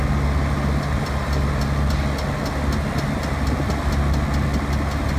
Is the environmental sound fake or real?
real